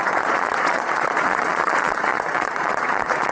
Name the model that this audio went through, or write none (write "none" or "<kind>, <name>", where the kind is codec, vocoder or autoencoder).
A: vocoder, Vocos